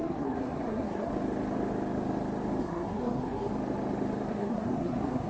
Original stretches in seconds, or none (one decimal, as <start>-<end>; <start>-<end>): 1.1-2.6; 3.5-4.3